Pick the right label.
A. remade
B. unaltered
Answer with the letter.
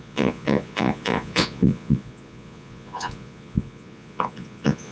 A